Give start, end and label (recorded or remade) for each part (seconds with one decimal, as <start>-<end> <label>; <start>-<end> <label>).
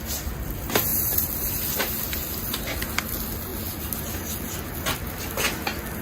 0.0-0.9 recorded; 0.9-1.5 remade; 1.5-6.0 recorded